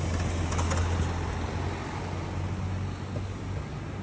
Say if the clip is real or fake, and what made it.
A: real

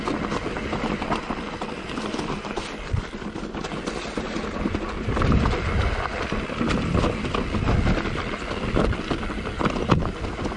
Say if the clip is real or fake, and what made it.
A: real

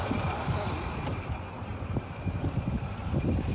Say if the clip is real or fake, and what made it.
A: real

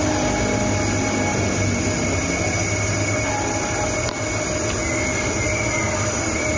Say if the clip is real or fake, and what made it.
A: real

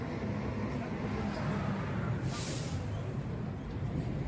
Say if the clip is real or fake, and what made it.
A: real